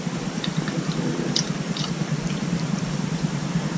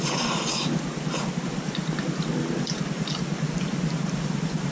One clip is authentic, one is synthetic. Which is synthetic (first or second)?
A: first